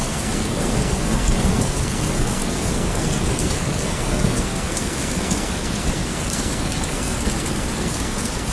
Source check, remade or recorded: remade